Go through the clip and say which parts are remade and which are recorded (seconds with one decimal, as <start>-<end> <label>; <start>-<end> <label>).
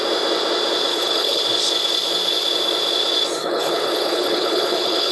0.0-0.9 recorded; 0.9-1.4 remade; 1.4-3.4 recorded; 3.4-5.1 remade